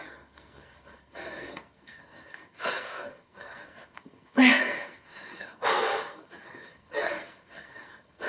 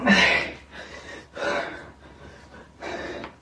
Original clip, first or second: second